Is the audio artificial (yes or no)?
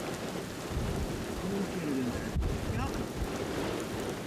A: no